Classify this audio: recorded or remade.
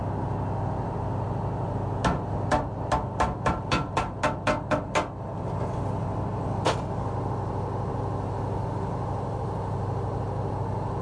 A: recorded